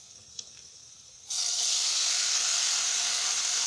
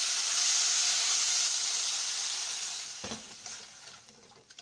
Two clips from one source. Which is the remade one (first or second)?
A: first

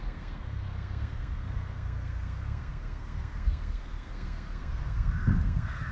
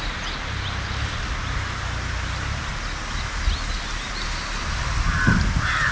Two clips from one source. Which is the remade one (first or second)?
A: first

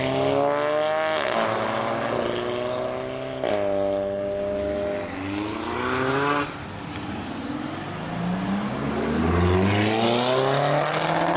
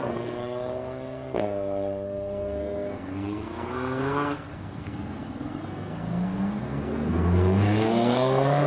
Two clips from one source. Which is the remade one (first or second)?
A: second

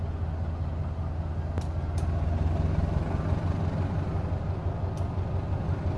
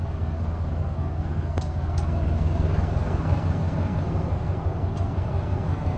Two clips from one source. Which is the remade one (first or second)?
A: second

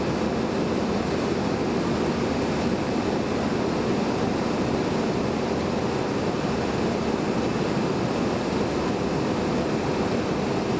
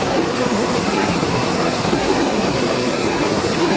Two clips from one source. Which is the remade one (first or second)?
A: second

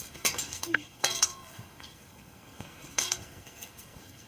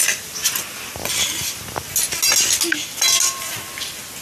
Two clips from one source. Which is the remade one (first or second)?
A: first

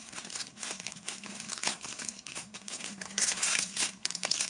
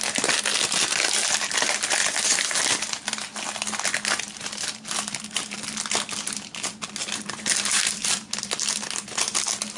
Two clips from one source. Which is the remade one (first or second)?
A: first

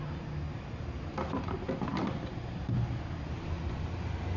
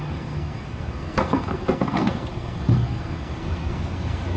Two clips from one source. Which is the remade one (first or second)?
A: second